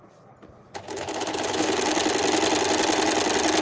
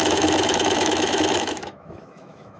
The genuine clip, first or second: first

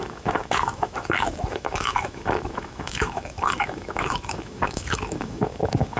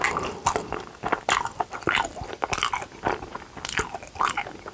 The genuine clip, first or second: second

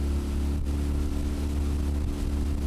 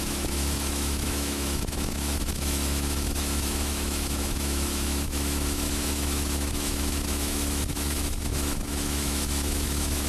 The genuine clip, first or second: first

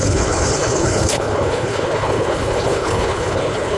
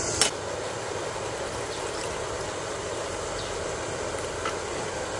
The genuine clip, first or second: second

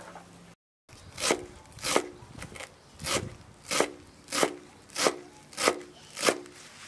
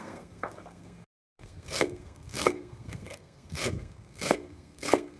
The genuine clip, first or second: first